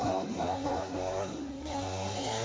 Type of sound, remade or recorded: remade